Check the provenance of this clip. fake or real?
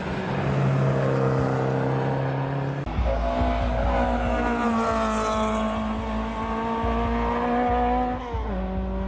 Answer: real